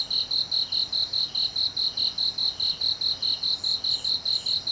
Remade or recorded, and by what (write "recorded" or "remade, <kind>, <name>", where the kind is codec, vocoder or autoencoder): recorded